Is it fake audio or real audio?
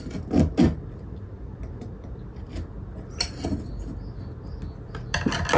real